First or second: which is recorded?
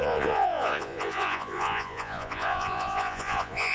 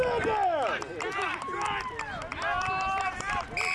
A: second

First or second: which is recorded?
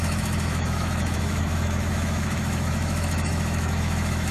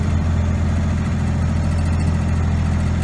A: second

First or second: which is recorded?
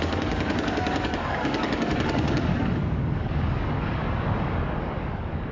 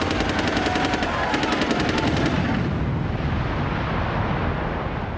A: second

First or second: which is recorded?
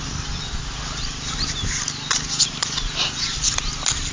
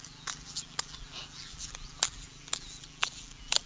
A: first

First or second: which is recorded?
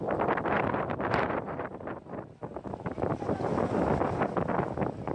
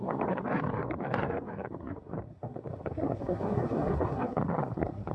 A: first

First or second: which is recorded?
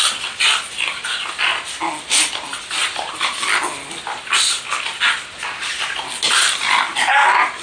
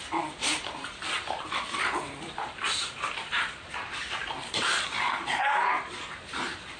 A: first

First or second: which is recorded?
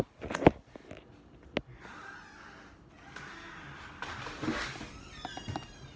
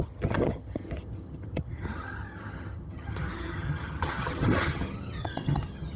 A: first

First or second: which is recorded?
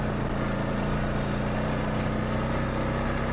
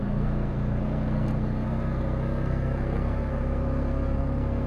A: first